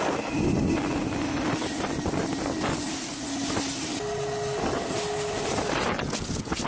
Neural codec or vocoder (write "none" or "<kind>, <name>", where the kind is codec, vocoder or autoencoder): none